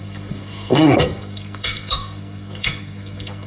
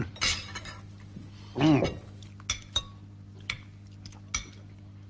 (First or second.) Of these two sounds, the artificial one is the first